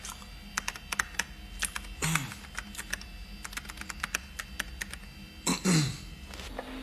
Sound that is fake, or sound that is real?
real